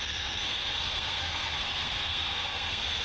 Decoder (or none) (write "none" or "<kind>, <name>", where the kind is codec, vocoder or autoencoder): codec, SNAC